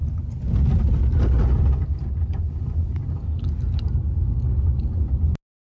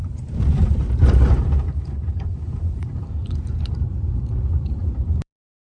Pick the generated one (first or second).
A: second